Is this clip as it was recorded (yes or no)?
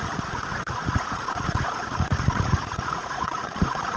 no